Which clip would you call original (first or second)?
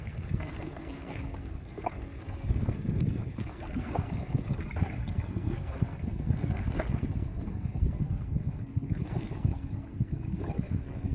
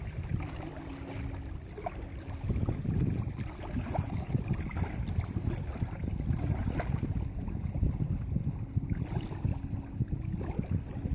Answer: second